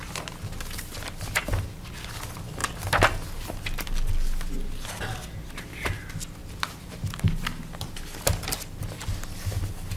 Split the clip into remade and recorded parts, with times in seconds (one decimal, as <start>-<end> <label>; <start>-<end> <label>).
0.0-10.0 recorded